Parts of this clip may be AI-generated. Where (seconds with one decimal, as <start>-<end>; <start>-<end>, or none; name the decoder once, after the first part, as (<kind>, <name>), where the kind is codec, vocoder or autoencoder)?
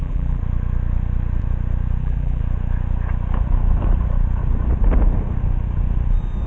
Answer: 0.0-0.4 (vocoder, BigVGAN v2); 2.0-2.4